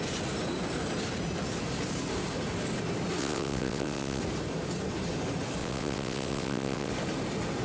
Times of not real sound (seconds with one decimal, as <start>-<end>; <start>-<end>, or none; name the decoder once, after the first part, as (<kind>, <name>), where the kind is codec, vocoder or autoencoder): 3.2-4.2 (vocoder, WaveNeXt); 5.6-6.9